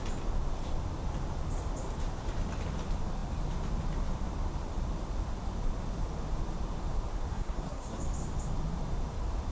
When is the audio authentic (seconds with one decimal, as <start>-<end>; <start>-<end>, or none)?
0.0-7.3; 8.0-9.5